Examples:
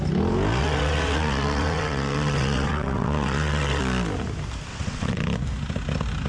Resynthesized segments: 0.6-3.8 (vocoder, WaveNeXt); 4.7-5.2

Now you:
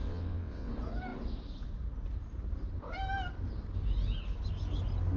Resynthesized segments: 0.0-0.7 (vocoder, WaveNeXt)

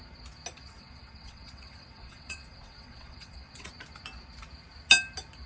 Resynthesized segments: 0.6-3.7 (vocoder, WaveNeXt)

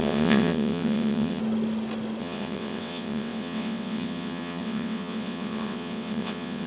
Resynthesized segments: 0.0-1.4 (vocoder, WaveNeXt); 2.2-6.7